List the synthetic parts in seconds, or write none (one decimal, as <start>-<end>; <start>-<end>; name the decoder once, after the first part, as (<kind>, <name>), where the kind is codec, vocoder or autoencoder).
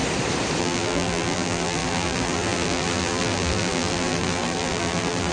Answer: 0.6-5.3 (vocoder, BigVGAN v2)